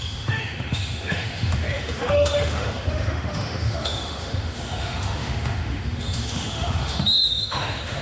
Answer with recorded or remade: remade